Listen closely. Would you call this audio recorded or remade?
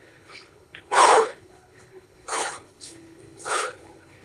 remade